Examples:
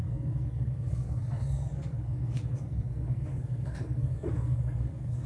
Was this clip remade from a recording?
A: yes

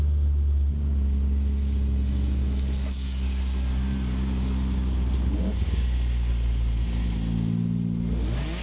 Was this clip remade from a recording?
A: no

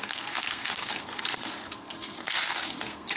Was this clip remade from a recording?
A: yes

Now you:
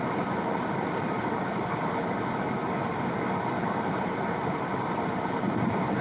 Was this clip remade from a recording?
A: yes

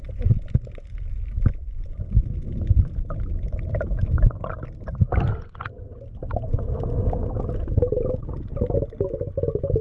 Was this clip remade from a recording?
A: no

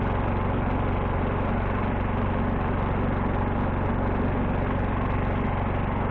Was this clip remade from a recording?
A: no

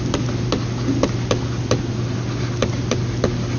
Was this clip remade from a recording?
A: no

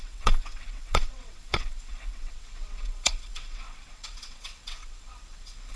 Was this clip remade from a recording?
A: yes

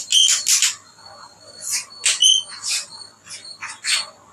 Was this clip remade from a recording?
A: no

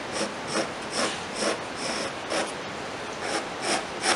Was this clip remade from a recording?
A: no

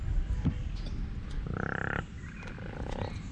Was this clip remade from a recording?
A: no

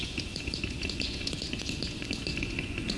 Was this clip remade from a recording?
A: yes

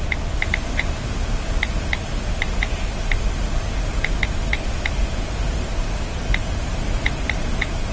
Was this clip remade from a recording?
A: no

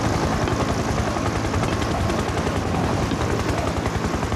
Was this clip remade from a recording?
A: no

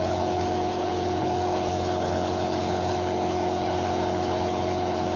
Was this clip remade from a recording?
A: yes